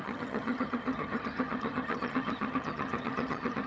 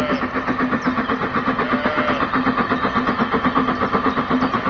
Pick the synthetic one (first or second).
first